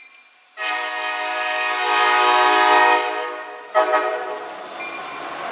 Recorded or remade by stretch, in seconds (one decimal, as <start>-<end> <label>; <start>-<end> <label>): 0.0-5.5 recorded